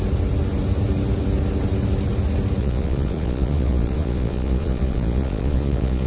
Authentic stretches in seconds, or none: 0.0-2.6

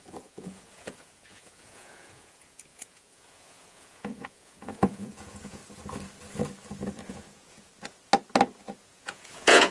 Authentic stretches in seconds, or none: 5.6-7.1; 7.7-8.8

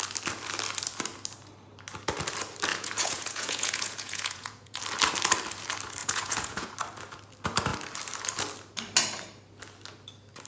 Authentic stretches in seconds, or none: 0.0-2.7; 4.8-6.0; 6.7-10.5

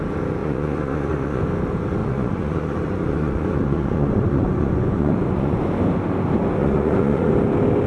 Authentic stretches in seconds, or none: 0.0-0.4; 1.4-2.0; 5.6-6.6; 7.3-7.9

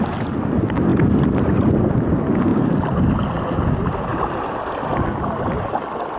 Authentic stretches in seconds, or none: 0.0-6.2

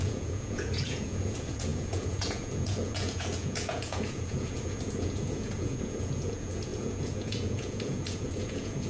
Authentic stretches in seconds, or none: none

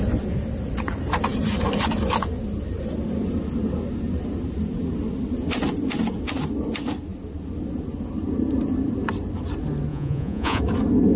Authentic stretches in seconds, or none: 0.0-9.9; 10.6-11.2